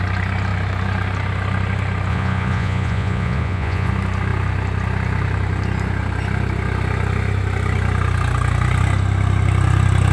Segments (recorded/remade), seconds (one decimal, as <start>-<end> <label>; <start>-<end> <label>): 0.0-2.1 recorded; 2.1-3.9 remade; 3.9-10.1 recorded